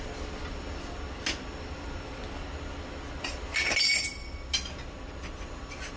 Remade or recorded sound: recorded